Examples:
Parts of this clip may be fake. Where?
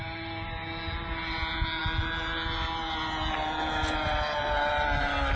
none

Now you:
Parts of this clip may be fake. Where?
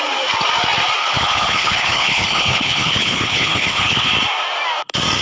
1.0-4.1 (codec, HILCodec)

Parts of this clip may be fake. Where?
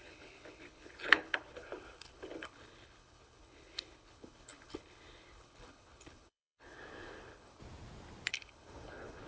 0.0-7.6 (codec, HILCodec); 8.3-9.3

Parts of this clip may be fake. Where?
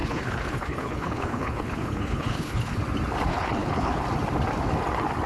0.0-2.8 (codec, HILCodec); 3.3-4.0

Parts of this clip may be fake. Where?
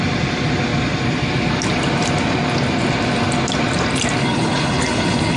4.2-5.4 (codec, HILCodec)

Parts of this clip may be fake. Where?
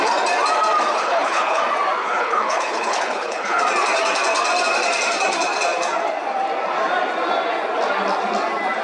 1.0-1.6 (codec, HILCodec); 2.0-3.6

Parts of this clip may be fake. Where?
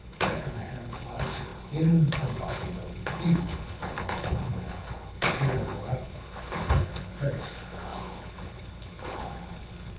0.0-10.0 (codec, HILCodec)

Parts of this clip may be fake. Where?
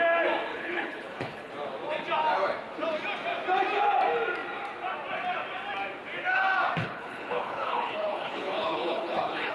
0.5-1.5 (codec, HILCodec); 6.8-9.5